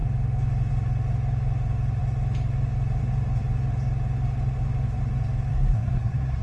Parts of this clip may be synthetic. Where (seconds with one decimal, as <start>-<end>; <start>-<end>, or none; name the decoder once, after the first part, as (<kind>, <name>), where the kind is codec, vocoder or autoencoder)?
5.5-6.4 (codec, SNAC)

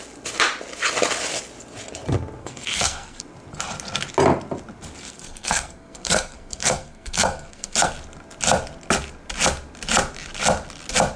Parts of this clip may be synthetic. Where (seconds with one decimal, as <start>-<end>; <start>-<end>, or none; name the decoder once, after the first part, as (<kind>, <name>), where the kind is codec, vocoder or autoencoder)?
2.4-3.2 (codec, SNAC); 5.0-7.9

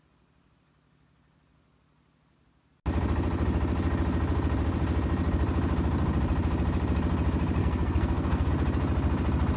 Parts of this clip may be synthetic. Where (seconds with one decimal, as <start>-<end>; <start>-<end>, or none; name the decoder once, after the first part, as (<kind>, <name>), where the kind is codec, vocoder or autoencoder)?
7.6-8.5 (codec, SNAC)